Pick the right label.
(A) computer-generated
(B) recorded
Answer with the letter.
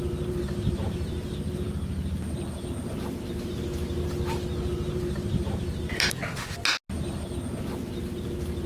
B